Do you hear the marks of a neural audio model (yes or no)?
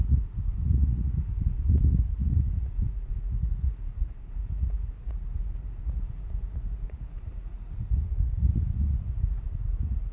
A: yes